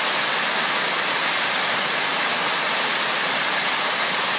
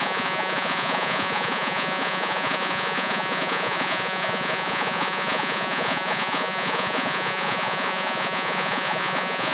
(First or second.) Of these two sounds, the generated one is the second